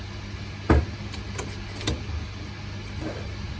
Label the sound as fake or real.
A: real